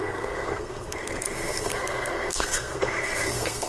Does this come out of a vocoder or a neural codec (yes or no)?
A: yes